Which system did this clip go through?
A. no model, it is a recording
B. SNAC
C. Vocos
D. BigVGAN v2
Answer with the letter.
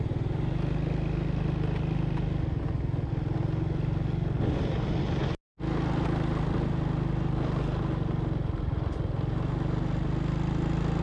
A